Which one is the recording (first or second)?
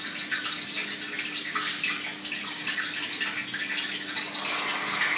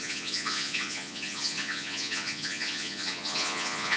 first